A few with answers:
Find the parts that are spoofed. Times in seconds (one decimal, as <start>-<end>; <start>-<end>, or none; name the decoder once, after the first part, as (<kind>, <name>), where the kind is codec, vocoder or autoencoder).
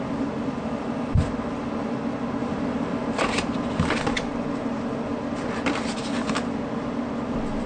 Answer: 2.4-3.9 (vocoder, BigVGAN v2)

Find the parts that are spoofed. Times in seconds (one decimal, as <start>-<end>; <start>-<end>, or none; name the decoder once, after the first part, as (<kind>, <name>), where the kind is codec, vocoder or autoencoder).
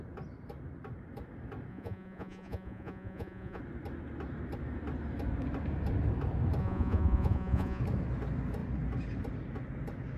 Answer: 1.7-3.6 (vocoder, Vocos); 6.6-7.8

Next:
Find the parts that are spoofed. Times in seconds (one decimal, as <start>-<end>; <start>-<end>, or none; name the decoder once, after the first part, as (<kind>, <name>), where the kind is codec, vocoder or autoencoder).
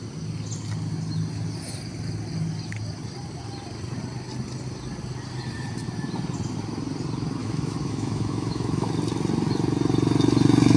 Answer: 7.4-8.9 (autoencoder, DAC-VAE)